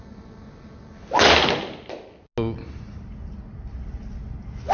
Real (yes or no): yes